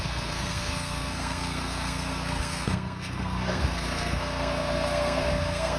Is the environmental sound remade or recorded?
remade